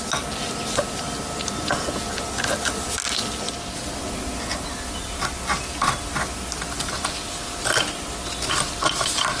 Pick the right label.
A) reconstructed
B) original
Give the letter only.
B